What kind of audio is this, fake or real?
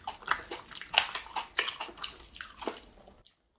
real